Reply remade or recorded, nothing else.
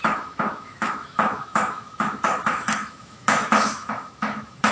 remade